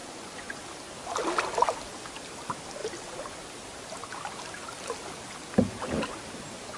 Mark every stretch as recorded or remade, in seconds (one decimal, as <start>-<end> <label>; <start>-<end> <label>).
0.0-0.6 remade; 0.6-6.8 recorded

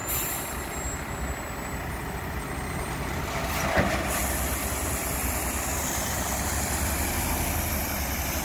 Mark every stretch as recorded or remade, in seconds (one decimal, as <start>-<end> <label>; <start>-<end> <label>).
0.0-8.4 recorded